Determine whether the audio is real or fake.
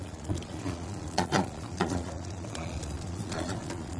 fake